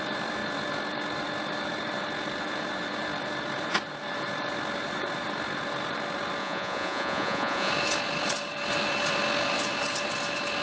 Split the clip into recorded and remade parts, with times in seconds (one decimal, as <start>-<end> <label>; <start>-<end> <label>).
0.0-6.4 recorded; 6.4-7.7 remade; 7.7-10.6 recorded